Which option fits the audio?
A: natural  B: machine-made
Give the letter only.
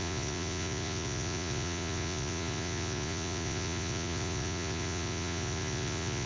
B